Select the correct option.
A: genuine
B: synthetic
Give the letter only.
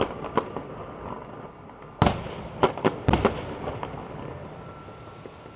A